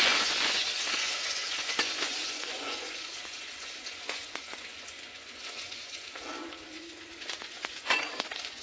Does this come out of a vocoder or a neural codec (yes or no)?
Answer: yes